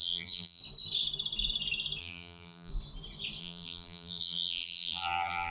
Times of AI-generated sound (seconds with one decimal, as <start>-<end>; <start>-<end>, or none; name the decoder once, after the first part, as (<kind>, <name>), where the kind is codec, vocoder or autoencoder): 0.0-0.6 (vocoder, BigVGAN v2); 2.0-2.7; 3.4-5.5

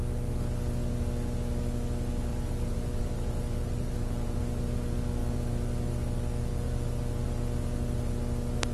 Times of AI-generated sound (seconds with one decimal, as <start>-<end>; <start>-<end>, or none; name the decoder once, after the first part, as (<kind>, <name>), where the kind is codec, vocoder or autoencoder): 2.3-4.4 (vocoder, BigVGAN v2)

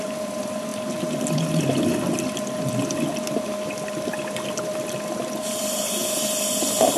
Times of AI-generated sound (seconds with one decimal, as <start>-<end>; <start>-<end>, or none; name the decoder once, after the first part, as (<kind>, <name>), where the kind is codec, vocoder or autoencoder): 0.0-0.7 (vocoder, BigVGAN v2); 4.2-6.0

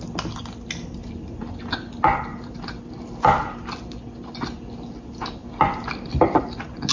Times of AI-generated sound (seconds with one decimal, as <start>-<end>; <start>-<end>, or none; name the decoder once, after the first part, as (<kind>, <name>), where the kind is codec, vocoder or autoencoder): 1.0-1.6 (vocoder, BigVGAN v2); 2.3-2.9; 5.4-6.9

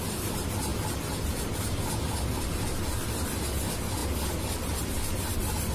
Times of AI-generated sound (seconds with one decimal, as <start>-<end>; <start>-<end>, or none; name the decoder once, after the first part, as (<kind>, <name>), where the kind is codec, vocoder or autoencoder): none

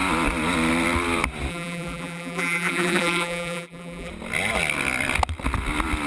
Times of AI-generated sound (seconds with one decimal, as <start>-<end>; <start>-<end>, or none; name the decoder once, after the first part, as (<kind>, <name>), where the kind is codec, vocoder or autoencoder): 1.5-4.1 (vocoder, BigVGAN v2)